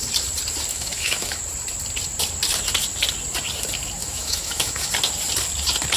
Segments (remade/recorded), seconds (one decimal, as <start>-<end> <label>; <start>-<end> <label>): 0.0-0.7 recorded; 0.7-1.4 remade; 1.4-4.0 recorded; 4.0-4.9 remade; 4.9-6.0 recorded